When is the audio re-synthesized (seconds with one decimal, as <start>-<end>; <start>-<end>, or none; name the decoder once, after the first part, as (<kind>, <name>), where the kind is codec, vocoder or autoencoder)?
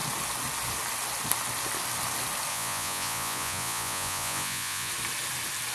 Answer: 2.5-4.9 (vocoder, Vocos)